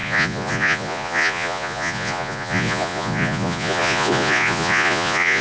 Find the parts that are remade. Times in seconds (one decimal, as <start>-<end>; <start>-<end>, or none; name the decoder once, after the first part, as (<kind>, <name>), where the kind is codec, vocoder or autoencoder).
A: 0.0-5.4 (vocoder, Vocos)